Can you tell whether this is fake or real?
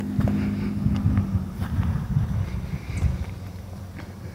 real